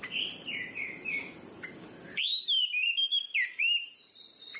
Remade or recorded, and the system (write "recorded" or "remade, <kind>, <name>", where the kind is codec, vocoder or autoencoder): remade, vocoder, BigVGAN v2